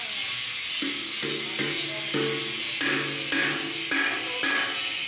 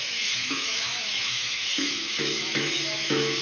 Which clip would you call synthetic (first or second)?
second